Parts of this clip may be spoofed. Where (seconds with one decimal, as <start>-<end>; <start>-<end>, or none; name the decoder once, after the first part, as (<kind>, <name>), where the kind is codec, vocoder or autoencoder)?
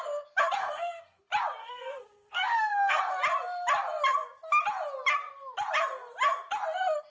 0.6-1.2 (codec, SNAC); 1.6-3.0